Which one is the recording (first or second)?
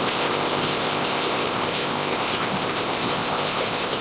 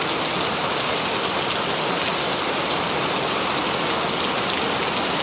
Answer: second